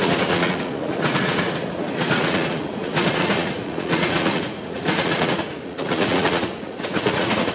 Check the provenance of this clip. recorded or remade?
remade